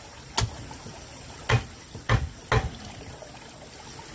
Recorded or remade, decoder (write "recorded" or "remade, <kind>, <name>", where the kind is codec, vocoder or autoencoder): recorded